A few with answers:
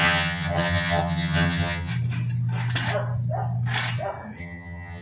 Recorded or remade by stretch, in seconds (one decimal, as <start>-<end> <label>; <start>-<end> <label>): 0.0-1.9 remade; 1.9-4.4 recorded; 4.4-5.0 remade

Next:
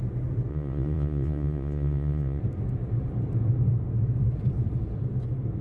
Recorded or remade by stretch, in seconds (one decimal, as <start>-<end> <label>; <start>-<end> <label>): 0.0-0.5 recorded; 0.5-2.4 remade; 2.4-5.6 recorded

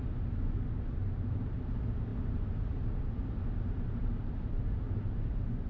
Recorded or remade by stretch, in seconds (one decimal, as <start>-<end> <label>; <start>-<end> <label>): 0.0-1.0 recorded; 1.0-1.5 remade; 1.5-2.1 recorded; 2.1-5.7 remade

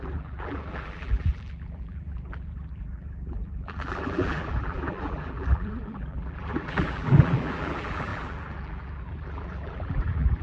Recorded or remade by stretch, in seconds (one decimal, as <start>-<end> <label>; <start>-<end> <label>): 0.0-10.4 remade